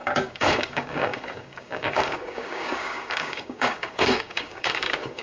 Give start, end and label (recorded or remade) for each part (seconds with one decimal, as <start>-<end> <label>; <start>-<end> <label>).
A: 0.0-5.2 remade